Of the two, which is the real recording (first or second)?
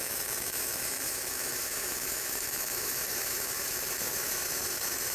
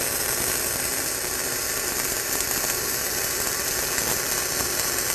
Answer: second